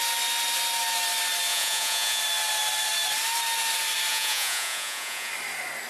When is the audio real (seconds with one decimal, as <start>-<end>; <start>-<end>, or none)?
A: 0.0-1.5; 2.2-4.1; 5.3-5.9